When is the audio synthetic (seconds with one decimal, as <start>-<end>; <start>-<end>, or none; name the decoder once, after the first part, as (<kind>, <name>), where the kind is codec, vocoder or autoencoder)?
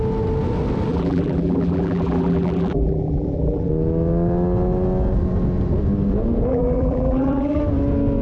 0.9-3.7 (vocoder, BigVGAN v2); 6.5-7.6